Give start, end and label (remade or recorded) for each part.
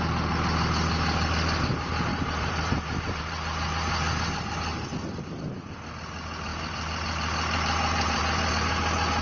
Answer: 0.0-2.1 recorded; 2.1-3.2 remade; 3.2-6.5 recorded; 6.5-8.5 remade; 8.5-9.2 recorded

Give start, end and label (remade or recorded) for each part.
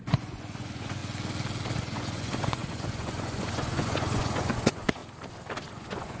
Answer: 0.0-1.0 remade; 1.0-1.8 recorded; 1.8-5.0 remade; 5.0-5.7 recorded; 5.7-6.2 remade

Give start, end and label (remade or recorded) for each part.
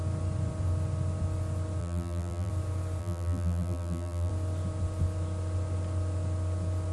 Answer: 0.0-1.8 recorded; 1.8-2.5 remade; 2.5-3.0 recorded; 3.0-4.3 remade; 4.3-6.9 recorded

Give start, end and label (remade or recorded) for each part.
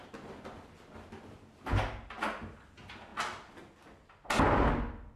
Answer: 0.0-5.2 recorded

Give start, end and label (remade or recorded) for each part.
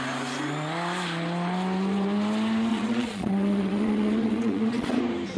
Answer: 0.0-2.7 recorded; 2.7-5.0 remade; 5.0-5.4 recorded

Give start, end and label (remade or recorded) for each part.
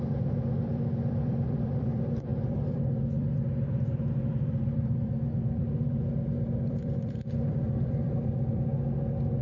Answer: 0.0-8.7 remade; 8.7-9.4 recorded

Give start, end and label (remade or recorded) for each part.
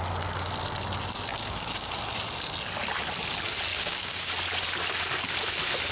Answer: 0.0-1.3 recorded; 1.3-1.9 remade; 1.9-3.7 recorded; 3.7-4.3 remade; 4.3-5.9 recorded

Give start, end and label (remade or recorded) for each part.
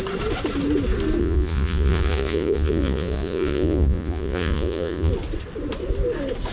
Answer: 0.0-1.2 recorded; 1.2-5.1 remade; 5.1-6.5 recorded